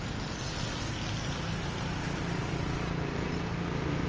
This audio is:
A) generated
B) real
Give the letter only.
B